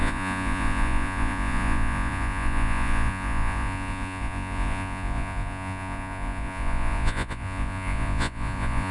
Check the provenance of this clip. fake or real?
fake